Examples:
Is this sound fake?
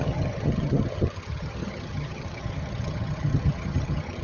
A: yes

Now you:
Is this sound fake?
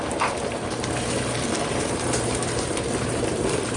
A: yes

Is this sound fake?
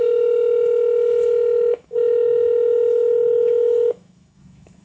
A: yes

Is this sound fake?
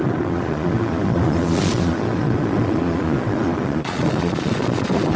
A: yes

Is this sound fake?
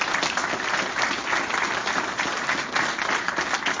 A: no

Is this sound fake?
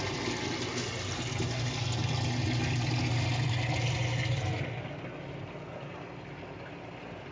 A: no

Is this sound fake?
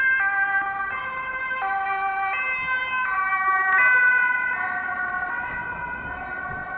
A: no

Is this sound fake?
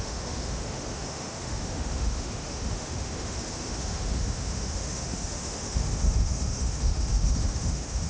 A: yes